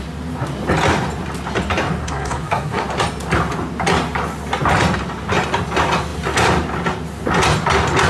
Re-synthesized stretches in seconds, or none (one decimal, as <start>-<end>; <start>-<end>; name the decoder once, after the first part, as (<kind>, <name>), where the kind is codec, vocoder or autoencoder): 2.0-2.8 (codec, SNAC)